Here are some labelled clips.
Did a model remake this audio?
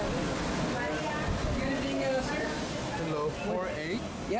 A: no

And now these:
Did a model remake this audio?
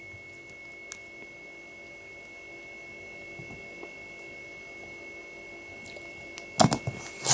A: no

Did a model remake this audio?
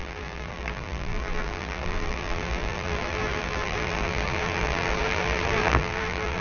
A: yes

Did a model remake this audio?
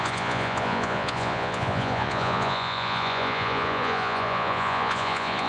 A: yes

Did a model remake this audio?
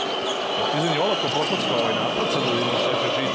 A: no